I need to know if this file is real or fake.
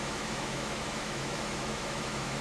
fake